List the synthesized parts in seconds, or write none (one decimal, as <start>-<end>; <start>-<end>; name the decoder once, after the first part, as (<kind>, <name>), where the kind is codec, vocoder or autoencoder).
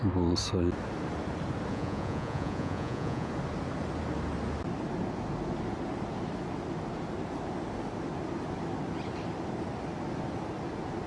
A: 1.7-3.3 (vocoder, Vocos)